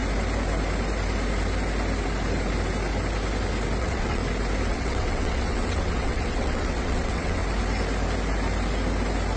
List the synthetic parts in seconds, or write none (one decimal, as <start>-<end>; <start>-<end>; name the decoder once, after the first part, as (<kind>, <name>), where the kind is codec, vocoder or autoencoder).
3.8-4.2 (vocoder, WaveNeXt); 4.7-7.4